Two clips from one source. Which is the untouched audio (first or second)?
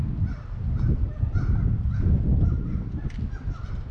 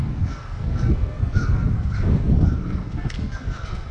first